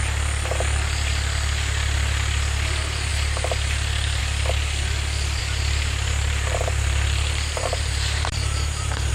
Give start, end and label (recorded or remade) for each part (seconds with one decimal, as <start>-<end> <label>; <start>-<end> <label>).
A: 0.0-3.1 recorded; 3.1-4.2 remade; 4.2-5.4 recorded; 5.4-9.1 remade